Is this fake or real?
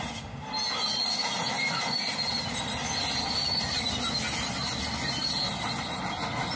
real